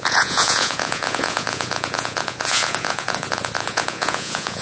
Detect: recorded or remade remade